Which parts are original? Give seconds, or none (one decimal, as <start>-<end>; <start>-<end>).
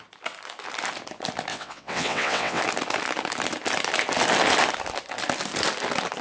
0.0-1.5; 2.6-6.2